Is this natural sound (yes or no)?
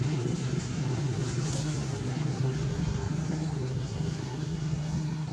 no